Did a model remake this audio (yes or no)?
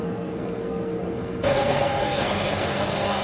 yes